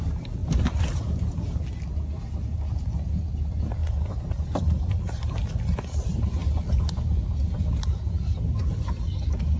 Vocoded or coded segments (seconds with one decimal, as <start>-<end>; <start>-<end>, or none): none